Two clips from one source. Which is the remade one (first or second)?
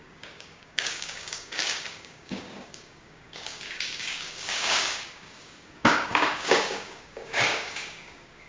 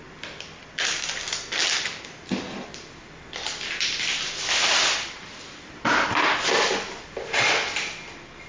first